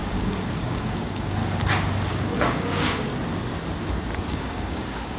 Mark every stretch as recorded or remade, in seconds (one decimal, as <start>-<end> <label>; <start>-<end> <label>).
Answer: 0.0-1.4 remade; 1.4-2.1 recorded; 2.1-3.1 remade; 3.1-4.3 recorded; 4.3-5.2 remade